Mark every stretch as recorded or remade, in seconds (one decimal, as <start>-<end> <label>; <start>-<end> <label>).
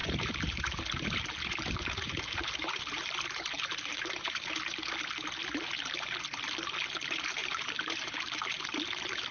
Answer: 0.0-4.5 remade; 4.5-7.4 recorded; 7.4-8.4 remade; 8.4-9.3 recorded